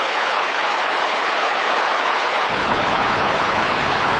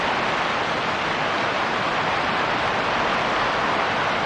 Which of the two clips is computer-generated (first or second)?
first